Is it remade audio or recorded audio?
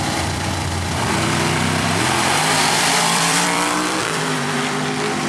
remade